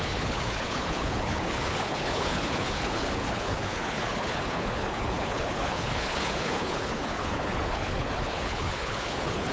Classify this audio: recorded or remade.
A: remade